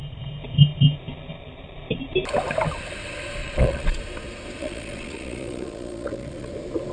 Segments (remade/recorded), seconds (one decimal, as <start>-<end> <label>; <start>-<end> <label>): 0.0-3.4 recorded; 3.4-4.0 remade; 4.0-4.6 recorded; 4.6-6.5 remade; 6.5-6.9 recorded